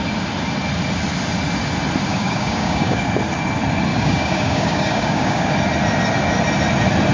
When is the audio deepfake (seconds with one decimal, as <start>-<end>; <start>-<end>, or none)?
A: 2.1-3.0; 3.9-5.5